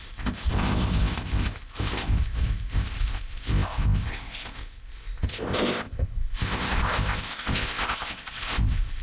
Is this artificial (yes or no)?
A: yes